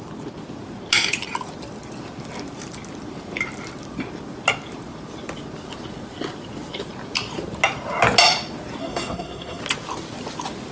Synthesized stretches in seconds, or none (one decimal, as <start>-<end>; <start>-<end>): 8.8-9.6